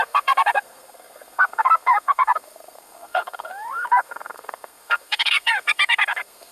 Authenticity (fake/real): fake